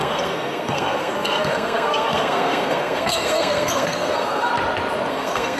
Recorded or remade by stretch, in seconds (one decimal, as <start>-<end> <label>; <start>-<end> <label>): 0.0-4.5 remade; 4.5-5.1 recorded; 5.1-5.6 remade